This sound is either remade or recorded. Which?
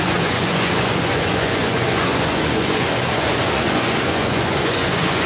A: remade